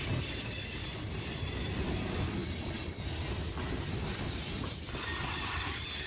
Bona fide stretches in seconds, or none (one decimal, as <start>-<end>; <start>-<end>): 2.4-4.6